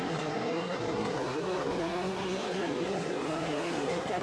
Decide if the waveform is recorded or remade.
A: remade